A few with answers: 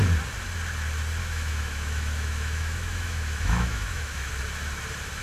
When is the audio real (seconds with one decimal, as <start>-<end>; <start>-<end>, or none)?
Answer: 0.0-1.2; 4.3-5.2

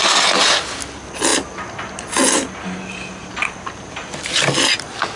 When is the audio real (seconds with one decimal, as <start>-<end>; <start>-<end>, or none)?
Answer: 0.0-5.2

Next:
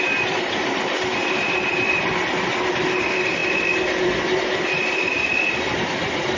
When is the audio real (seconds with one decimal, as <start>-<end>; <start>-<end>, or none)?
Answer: none

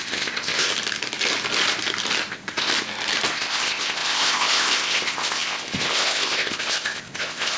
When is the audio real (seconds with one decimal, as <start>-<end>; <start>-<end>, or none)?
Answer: 0.7-2.3; 2.7-3.3